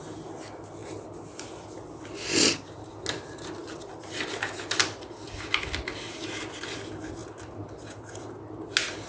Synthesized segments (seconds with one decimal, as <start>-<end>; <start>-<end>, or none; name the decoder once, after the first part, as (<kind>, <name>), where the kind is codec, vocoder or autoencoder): none